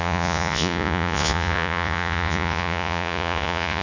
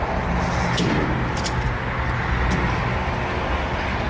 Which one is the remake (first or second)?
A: first